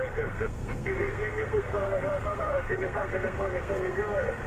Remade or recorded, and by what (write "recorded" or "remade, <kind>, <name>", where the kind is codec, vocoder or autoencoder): remade, codec, SNAC